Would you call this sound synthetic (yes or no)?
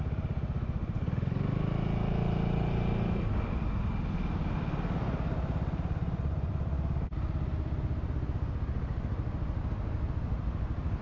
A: no